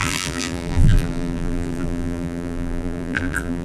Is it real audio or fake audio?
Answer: fake